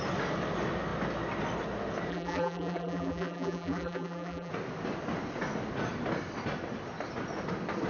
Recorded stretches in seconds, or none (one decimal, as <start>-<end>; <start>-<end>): 0.0-2.1; 4.5-7.9